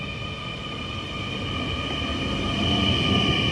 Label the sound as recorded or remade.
recorded